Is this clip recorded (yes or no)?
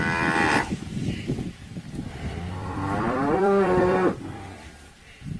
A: no